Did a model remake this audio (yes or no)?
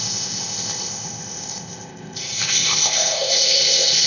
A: yes